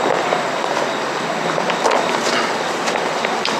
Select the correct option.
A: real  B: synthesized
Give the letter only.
B